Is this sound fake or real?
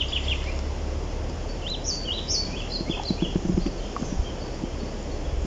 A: real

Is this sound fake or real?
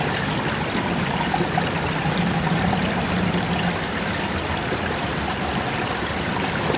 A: real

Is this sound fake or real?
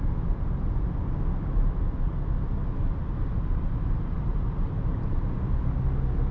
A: real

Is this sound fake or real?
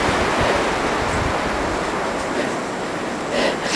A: real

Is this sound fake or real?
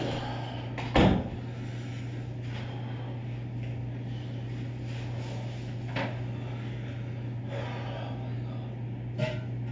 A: real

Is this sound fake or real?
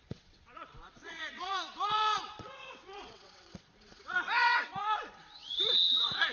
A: fake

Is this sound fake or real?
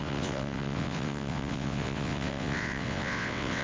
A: fake